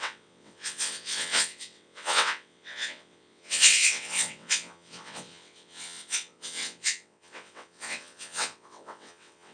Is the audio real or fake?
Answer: fake